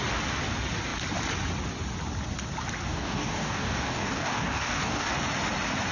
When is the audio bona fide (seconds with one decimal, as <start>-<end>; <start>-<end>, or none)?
0.0-2.9; 5.1-5.9